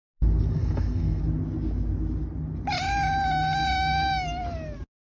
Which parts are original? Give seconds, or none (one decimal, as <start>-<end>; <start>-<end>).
0.0-0.5; 1.2-5.2